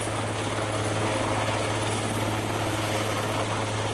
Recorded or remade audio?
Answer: recorded